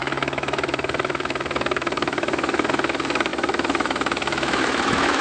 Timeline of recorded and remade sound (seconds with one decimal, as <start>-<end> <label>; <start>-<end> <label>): 0.0-5.2 remade